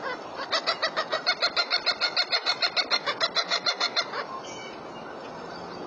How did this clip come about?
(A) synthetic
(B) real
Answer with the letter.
B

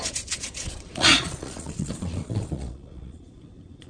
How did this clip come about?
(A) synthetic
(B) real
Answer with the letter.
A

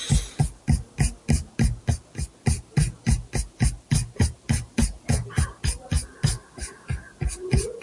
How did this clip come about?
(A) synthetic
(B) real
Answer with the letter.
B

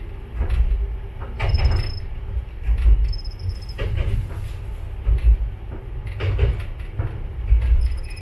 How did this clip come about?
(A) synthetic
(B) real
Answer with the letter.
B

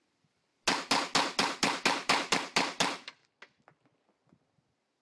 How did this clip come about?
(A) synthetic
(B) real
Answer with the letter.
B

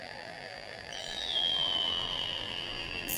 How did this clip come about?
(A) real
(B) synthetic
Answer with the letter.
B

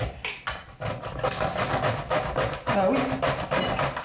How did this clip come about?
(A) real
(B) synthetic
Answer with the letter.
A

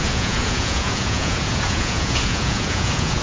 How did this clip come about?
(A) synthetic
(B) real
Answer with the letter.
A